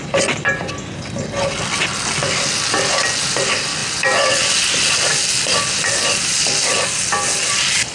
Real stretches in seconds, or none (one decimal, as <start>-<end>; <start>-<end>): 0.0-7.9

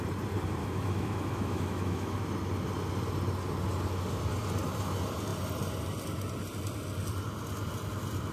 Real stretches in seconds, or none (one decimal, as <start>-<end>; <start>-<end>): 0.0-0.6; 2.2-8.3

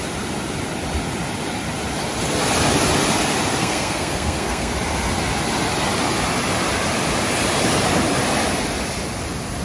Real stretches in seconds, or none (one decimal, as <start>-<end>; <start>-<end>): 0.0-3.6; 4.7-9.6

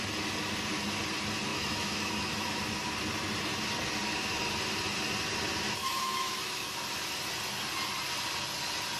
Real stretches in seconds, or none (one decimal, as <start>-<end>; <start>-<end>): 0.0-1.5; 2.6-5.8; 6.7-9.0

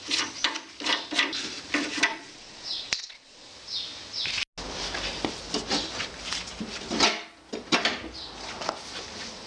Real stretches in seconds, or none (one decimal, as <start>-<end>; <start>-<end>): 0.0-2.1; 3.5-9.5